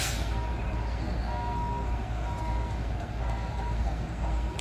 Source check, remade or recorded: remade